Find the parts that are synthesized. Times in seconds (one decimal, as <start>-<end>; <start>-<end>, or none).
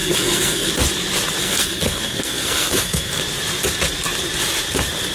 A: 0.0-0.7; 1.4-3.2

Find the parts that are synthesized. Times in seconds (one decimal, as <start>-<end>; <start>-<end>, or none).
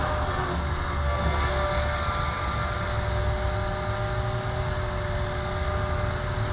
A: 0.5-1.5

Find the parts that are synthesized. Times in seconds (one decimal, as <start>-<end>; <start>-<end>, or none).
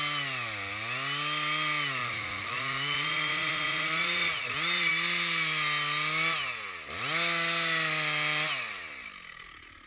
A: 2.0-4.9